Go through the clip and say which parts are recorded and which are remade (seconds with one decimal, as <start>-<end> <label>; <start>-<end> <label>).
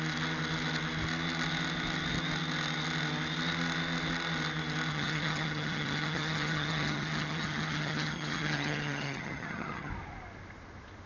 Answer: 0.0-4.9 recorded; 4.9-9.9 remade; 9.9-11.1 recorded